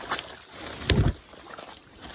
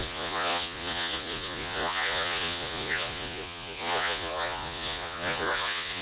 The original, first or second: first